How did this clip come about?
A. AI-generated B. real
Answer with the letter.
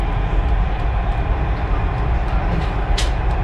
B